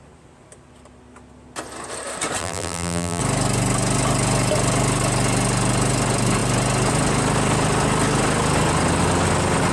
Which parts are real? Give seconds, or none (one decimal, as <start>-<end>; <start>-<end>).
0.0-2.4; 3.2-9.7